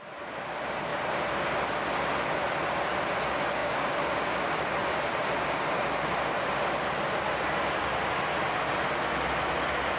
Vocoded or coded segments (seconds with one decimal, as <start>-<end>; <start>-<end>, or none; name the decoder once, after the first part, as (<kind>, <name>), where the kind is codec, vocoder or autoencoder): 0.9-1.5 (vocoder, BigVGAN v2)